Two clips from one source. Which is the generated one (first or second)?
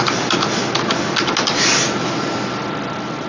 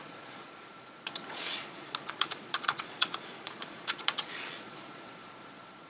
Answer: second